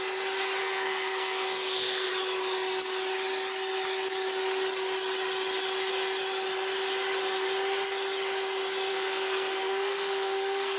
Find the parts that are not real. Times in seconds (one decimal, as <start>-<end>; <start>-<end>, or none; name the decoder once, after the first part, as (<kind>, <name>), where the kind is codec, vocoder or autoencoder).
0.6-2.1 (codec, SNAC); 8.9-10.8